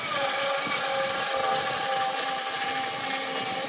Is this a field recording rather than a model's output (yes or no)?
yes